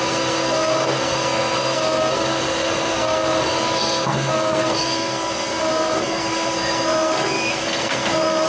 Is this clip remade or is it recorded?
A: remade